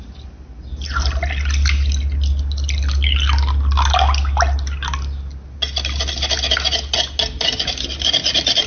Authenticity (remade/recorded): recorded